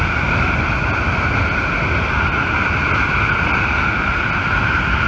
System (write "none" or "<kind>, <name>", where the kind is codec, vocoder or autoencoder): none